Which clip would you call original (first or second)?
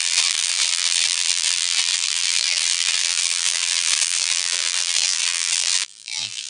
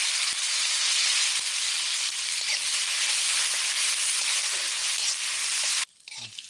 second